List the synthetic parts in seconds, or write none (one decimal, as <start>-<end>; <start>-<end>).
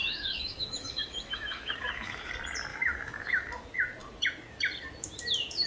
0.0-2.3; 2.7-3.5